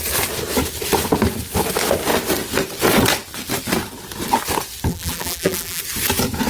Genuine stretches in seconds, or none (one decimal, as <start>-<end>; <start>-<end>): 0.0-4.9; 5.8-6.5